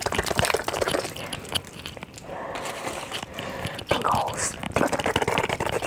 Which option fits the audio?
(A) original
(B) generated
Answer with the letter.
B